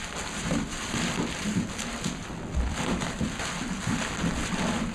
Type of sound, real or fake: real